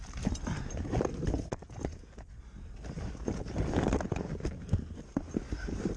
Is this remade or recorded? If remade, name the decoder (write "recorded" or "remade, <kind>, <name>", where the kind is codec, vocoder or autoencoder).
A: recorded